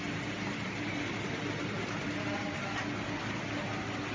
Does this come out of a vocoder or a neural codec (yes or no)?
no